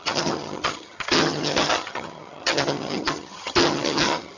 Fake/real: fake